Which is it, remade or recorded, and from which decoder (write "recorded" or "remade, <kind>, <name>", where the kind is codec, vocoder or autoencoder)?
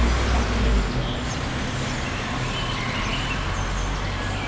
recorded